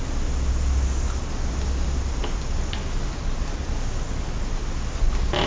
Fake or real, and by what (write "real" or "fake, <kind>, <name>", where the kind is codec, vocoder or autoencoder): real